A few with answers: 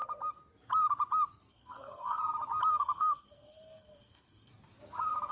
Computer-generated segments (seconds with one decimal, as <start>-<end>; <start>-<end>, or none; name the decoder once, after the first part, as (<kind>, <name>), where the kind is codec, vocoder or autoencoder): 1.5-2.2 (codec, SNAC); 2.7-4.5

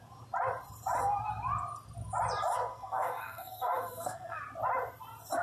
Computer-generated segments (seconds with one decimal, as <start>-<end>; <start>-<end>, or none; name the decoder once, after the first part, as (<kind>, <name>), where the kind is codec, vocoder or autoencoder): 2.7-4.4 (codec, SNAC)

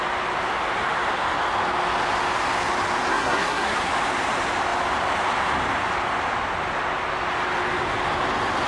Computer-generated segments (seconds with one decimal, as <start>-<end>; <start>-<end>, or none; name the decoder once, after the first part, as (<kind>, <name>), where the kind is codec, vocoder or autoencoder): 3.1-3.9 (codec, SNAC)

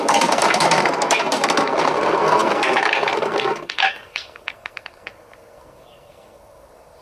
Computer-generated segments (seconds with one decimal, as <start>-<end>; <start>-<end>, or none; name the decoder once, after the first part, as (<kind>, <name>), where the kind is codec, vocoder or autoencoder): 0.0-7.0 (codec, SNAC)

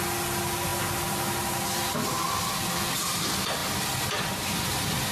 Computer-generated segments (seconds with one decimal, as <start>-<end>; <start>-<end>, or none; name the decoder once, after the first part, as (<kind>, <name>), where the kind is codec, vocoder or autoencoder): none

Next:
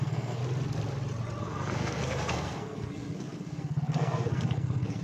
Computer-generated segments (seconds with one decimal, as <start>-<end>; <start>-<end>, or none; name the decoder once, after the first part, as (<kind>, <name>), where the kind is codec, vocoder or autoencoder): 0.0-0.4 (codec, SNAC); 1.4-5.0

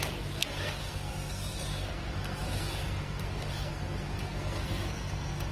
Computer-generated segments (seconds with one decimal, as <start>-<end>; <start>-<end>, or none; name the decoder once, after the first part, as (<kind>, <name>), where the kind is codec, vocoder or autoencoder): 0.0-5.5 (codec, SNAC)

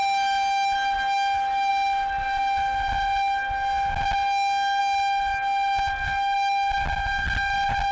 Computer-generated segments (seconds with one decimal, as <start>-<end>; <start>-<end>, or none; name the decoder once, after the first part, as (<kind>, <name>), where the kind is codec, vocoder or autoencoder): none